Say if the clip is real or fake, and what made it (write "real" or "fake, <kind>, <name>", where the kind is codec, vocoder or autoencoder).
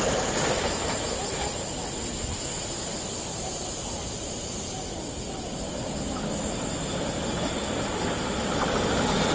real